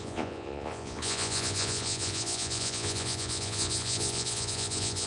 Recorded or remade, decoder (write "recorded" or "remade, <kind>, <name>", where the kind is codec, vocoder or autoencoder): remade, vocoder, Vocos